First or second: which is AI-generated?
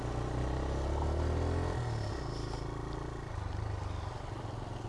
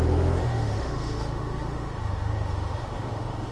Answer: second